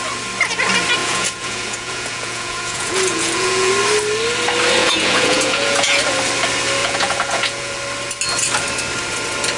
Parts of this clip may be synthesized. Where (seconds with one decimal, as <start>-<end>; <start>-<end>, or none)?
1.0-3.7; 4.8-6.0; 6.8-7.7